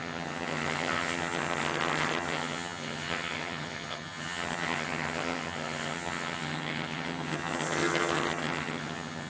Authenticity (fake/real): fake